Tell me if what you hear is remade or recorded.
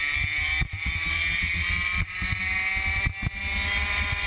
recorded